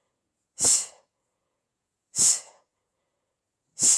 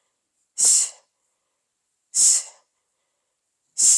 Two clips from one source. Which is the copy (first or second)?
first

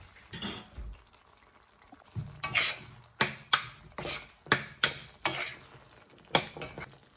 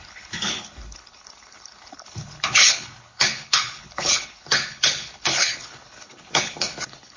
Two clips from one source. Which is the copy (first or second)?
second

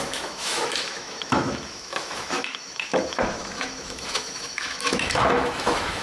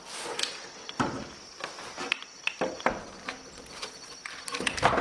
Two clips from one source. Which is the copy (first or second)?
first